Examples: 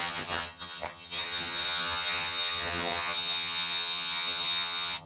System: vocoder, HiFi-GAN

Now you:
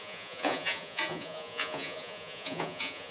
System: vocoder, Vocos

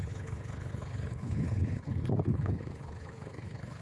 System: codec, HILCodec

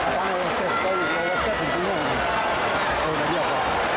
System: vocoder, BigVGAN v2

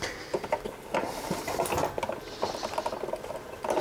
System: none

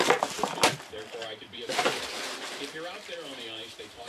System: vocoder, BigVGAN v2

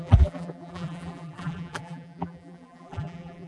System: vocoder, BigVGAN v2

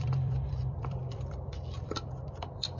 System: vocoder, BigVGAN v2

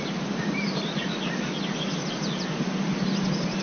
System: none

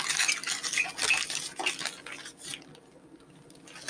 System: none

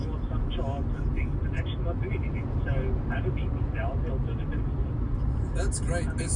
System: none